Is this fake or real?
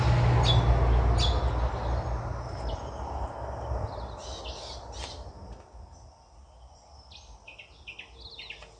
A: real